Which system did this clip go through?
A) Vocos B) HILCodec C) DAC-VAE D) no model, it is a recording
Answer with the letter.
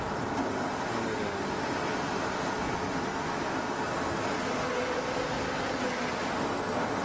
D